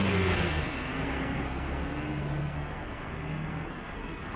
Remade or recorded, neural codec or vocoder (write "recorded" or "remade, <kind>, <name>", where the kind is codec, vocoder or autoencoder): remade, codec, SNAC